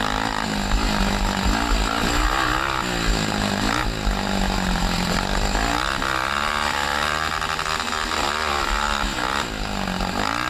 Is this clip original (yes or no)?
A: yes